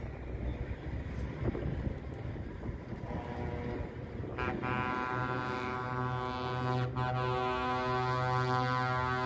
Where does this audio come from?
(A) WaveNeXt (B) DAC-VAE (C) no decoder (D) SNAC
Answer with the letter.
C